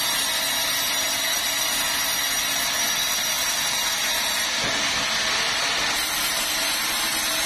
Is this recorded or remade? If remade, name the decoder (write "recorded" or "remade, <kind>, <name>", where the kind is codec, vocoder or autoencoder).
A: recorded